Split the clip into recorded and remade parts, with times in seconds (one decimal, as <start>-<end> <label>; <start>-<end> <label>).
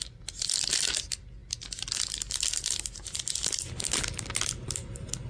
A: 0.0-5.3 recorded